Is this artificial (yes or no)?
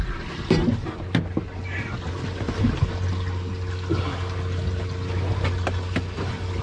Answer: no